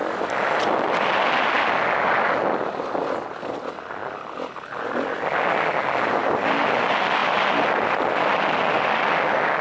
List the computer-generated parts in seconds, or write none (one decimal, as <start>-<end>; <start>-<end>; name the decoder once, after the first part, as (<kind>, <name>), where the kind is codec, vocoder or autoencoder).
0.0-0.6 (vocoder, BigVGAN v2); 4.0-5.2; 6.2-6.8